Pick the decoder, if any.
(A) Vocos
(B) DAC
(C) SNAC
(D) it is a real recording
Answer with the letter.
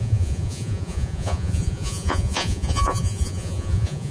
A